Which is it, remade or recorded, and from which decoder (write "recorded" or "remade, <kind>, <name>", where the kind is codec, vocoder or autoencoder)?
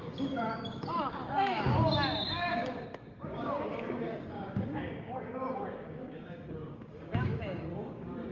remade, codec, DAC